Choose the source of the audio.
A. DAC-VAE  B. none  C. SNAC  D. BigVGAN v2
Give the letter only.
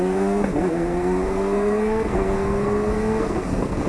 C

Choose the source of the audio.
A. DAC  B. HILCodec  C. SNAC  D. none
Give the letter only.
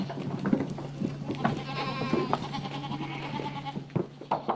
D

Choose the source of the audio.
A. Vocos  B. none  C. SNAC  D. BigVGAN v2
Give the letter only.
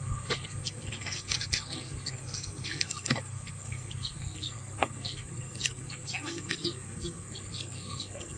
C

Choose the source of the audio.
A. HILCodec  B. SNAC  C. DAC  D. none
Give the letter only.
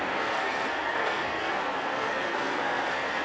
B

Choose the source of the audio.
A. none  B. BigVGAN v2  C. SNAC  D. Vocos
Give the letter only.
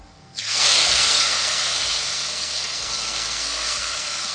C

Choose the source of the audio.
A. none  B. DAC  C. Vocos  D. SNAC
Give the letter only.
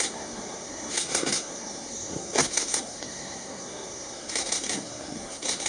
D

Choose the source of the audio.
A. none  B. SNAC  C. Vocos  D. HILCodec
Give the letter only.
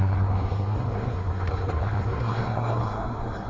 B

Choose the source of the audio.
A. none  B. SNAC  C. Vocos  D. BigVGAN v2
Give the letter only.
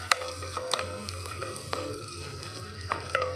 B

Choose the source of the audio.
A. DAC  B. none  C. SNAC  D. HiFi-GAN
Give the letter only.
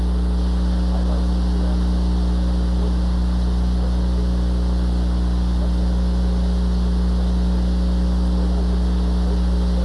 B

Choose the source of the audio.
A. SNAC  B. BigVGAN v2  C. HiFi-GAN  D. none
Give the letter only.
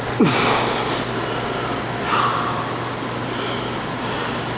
D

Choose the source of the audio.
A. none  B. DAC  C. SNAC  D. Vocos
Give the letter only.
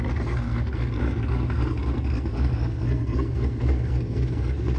C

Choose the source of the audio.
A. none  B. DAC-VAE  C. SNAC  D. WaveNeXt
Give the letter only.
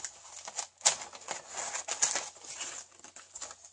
A